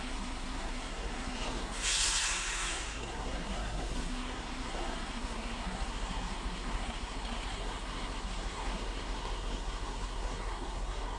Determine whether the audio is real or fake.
fake